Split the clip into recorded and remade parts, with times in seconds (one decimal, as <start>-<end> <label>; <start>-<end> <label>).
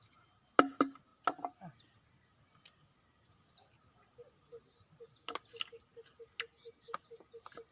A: 0.0-7.7 recorded